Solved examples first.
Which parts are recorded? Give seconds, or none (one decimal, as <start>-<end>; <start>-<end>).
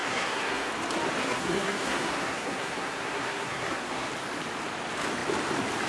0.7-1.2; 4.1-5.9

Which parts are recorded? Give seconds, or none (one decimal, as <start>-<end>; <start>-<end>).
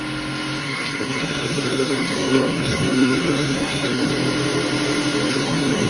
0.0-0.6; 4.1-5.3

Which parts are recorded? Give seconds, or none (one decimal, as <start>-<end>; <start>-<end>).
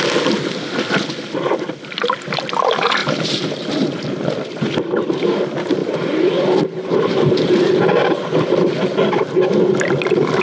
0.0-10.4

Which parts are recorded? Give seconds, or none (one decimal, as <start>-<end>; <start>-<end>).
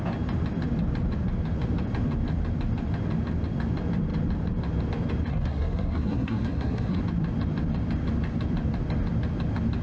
0.0-5.3; 7.0-9.8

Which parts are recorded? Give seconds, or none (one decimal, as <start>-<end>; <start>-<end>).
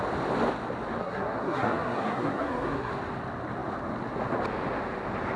0.0-1.0; 2.9-5.4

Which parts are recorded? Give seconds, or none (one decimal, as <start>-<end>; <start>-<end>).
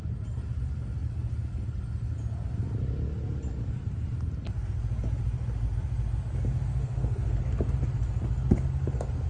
0.0-6.8; 7.4-9.3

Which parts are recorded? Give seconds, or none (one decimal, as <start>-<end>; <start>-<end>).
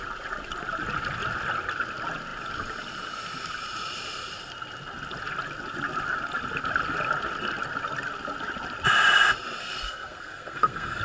0.0-9.6